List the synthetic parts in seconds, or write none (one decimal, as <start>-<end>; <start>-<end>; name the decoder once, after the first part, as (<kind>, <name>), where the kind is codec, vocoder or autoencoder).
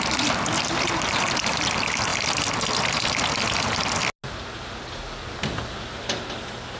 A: none